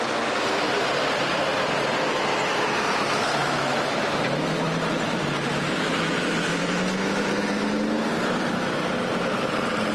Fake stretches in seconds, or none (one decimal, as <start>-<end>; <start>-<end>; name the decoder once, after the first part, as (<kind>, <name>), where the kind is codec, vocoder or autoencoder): 3.4-4.2 (autoencoder, DAC-VAE); 5.5-7.6

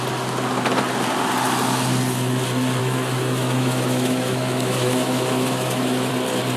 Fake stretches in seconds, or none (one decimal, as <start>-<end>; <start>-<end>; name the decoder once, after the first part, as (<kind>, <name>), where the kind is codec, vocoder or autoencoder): 2.8-6.1 (autoencoder, DAC-VAE)

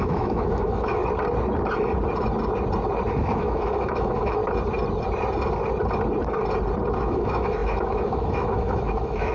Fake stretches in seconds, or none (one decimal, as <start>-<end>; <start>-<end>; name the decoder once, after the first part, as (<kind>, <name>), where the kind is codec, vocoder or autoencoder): 0.0-1.0 (autoencoder, DAC-VAE); 3.1-4.4; 7.0-9.3

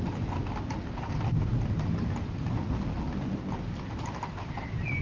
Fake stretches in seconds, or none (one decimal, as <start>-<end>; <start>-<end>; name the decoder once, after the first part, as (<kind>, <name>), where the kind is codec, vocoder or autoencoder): none

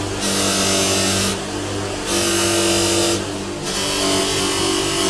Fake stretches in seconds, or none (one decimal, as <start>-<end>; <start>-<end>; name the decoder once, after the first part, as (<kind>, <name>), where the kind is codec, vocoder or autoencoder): none

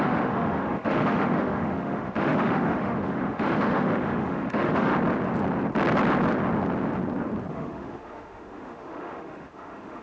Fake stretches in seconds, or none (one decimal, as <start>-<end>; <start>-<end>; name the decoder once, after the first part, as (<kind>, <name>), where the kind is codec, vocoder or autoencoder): 0.0-4.9 (autoencoder, DAC-VAE); 7.5-10.0